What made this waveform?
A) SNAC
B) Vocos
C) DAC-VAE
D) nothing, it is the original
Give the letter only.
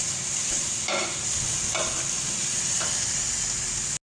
D